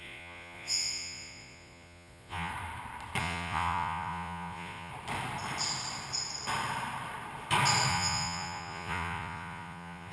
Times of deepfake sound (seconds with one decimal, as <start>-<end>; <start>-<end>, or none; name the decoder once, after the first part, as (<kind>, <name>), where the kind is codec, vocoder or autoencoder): 0.0-2.5 (vocoder, Vocos); 3.2-4.9; 7.9-10.1

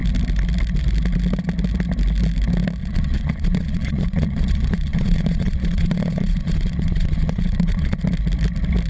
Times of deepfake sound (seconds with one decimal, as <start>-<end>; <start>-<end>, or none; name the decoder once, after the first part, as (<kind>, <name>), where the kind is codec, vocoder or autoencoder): 2.8-8.0 (vocoder, Vocos)

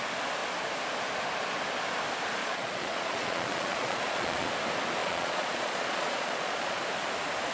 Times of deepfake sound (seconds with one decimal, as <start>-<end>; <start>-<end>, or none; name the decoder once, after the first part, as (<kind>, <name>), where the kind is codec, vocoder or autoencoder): 2.4-4.5 (vocoder, Vocos); 5.0-6.8

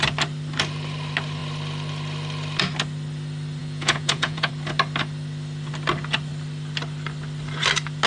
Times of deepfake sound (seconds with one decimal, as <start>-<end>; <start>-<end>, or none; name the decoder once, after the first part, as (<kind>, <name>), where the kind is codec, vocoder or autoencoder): 3.6-4.5 (vocoder, Vocos)

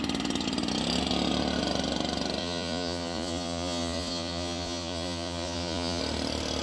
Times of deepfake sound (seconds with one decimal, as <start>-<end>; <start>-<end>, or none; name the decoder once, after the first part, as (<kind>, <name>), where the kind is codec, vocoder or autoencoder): 2.4-6.0 (vocoder, Vocos)

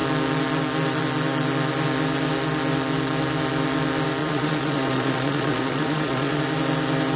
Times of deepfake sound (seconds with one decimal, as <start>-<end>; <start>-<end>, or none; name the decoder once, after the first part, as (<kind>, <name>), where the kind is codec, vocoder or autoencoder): 4.2-6.4 (vocoder, Vocos)

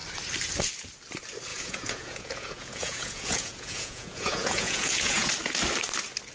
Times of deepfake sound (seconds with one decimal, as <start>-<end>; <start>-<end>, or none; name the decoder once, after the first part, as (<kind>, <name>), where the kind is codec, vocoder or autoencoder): 1.5-5.3 (vocoder, Vocos)

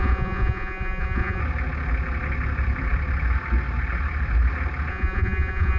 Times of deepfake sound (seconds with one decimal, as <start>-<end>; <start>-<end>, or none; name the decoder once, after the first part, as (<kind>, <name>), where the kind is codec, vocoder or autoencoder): 0.0-1.4 (vocoder, Vocos); 4.9-5.8